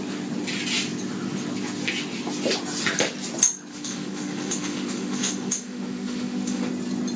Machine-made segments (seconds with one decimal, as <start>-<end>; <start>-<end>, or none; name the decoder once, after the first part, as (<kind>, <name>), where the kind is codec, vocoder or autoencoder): 3.7-6.7 (autoencoder, DAC-VAE)